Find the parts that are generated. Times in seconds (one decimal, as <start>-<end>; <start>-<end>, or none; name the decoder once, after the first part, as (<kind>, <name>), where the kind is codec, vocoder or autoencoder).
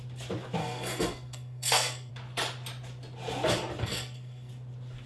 0.6-2.1 (codec, SNAC); 3.8-4.5